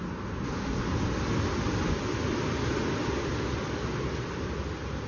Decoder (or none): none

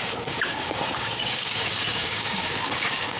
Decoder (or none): codec, DAC